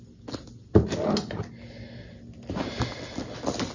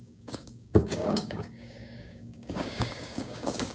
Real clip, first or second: first